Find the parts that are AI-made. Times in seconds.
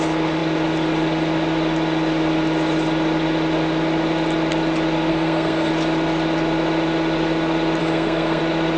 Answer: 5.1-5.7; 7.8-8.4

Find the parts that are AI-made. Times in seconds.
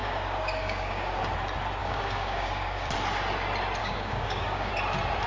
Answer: 0.0-1.2; 1.8-2.9; 3.8-4.7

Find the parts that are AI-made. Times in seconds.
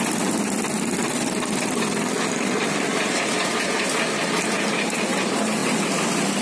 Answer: none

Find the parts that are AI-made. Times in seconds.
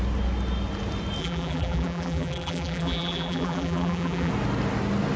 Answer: 1.2-4.3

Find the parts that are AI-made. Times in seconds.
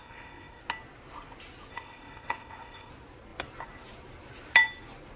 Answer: 0.0-0.6; 1.7-2.9